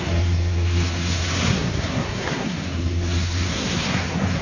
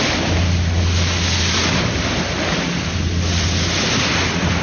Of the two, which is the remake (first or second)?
first